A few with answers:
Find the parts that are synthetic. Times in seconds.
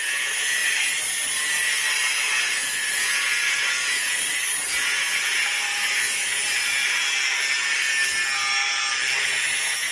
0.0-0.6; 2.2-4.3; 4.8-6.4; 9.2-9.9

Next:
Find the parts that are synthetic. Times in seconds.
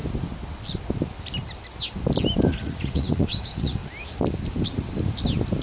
2.5-3.8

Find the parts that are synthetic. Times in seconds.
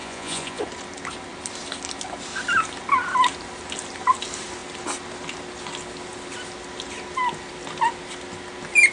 0.0-0.6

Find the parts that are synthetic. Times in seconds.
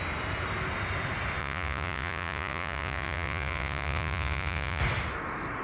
1.4-4.8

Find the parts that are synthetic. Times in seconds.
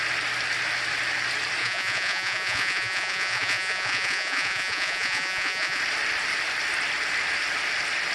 1.6-5.8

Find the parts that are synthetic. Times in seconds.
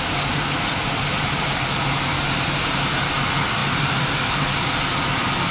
none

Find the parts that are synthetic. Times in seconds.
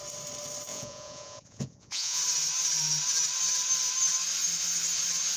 0.7-2.2